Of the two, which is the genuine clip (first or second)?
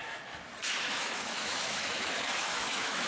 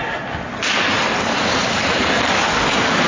second